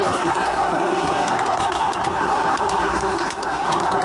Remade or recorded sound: remade